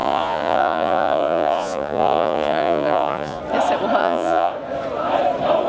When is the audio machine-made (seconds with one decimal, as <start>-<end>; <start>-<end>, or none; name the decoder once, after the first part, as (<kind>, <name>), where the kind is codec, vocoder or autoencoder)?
0.0-3.4 (vocoder, Vocos); 4.0-4.5